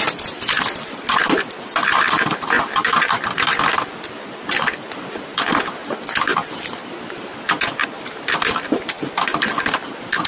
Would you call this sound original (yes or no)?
no